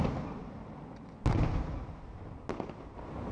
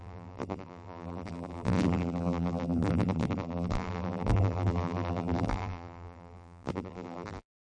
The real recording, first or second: first